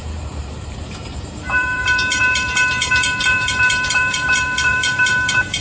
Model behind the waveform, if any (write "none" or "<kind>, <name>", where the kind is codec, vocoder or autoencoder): vocoder, BigVGAN v2